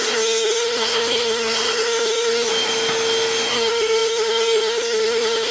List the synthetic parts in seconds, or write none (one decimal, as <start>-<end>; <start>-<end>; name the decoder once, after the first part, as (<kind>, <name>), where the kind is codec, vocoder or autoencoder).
0.0-2.5 (codec, SNAC); 3.5-5.5